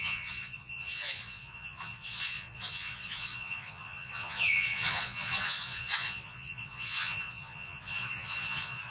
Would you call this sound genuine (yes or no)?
no